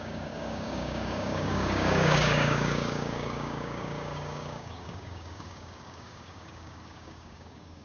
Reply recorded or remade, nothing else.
remade